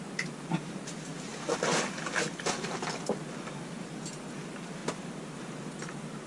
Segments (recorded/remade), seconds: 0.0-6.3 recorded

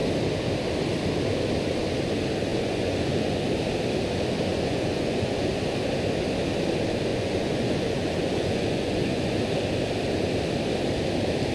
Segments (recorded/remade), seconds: 0.0-2.5 recorded; 2.5-3.4 remade; 3.4-4.5 recorded; 4.5-5.5 remade; 5.5-7.1 recorded; 7.1-9.4 remade; 9.4-11.5 recorded